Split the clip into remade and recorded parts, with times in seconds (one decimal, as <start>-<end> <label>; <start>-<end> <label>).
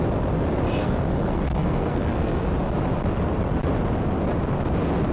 0.0-0.8 recorded; 0.8-2.5 remade; 2.5-5.1 recorded